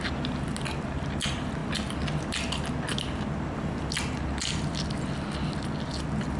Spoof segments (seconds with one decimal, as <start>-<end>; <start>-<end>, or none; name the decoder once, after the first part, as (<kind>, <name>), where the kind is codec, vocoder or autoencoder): none